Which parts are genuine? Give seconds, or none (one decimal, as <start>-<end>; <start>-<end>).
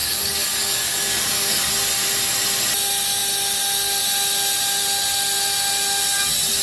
1.7-6.6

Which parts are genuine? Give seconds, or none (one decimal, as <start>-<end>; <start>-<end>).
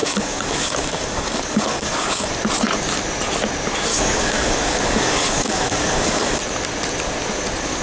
2.3-3.9; 6.4-7.8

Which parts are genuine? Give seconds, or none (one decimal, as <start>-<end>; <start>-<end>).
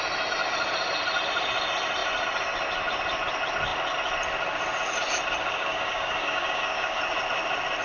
0.0-5.5; 7.0-7.8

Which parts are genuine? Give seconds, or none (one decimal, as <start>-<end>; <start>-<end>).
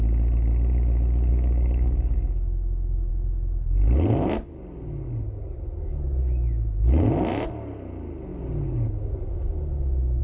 0.0-1.3; 3.1-10.2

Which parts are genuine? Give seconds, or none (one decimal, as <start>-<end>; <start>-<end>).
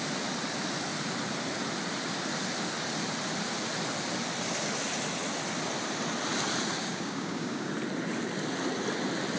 0.0-6.8; 7.7-9.4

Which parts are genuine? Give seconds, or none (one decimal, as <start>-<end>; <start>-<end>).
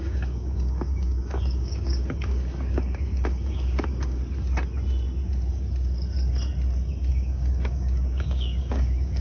4.2-7.1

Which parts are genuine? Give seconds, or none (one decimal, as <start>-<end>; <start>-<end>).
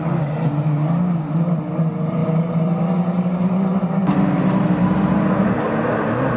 0.0-0.8; 1.3-6.4